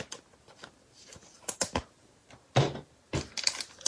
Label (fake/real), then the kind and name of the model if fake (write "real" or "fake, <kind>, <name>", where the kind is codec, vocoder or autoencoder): real